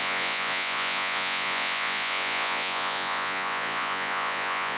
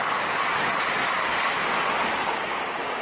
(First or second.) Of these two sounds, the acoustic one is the second